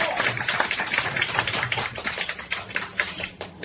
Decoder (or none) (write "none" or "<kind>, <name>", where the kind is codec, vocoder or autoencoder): vocoder, BigVGAN v2